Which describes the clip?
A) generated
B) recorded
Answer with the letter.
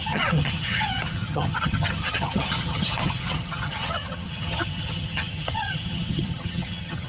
A